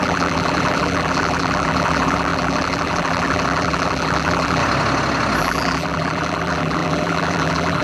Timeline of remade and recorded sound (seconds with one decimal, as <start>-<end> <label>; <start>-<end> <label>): 0.0-4.6 remade; 4.6-5.4 recorded; 5.4-7.8 remade